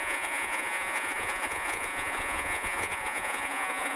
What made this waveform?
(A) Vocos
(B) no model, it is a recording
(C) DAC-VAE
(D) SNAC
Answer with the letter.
A